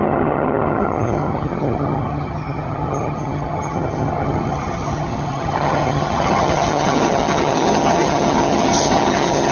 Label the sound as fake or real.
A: fake